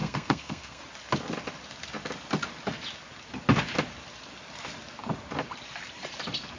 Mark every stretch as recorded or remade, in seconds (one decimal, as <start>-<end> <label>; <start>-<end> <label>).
0.0-0.8 remade; 0.8-6.6 recorded